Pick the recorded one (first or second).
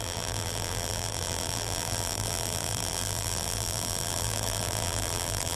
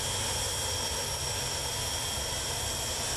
second